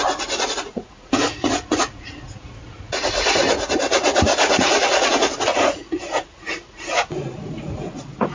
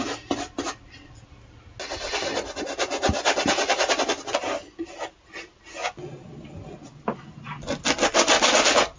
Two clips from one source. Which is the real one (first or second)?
second